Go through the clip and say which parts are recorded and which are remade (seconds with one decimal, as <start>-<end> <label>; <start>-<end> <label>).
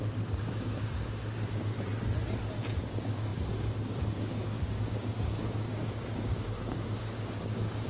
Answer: 0.0-1.9 remade; 1.9-2.6 recorded; 2.6-7.9 remade